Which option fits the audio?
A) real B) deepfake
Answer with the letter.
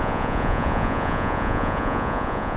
B